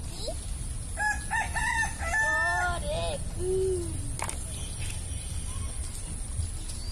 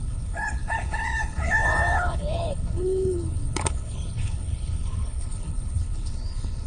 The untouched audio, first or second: first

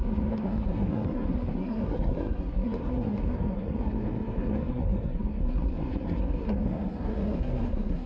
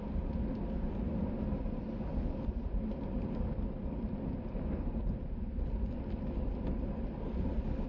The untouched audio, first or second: second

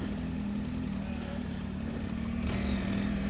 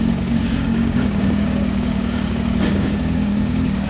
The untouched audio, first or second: first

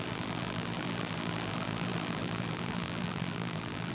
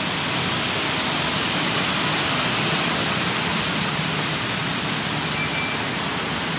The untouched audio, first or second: second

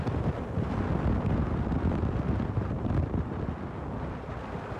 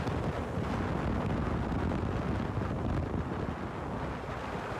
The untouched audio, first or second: second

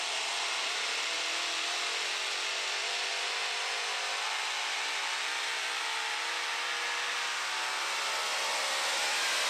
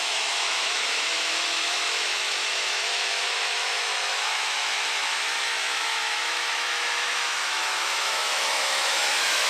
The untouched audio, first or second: first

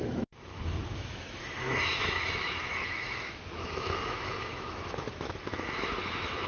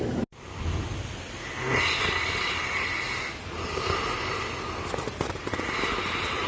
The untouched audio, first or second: second